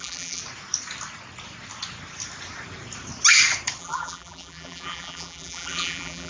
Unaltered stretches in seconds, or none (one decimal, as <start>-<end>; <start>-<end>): 0.4-3.8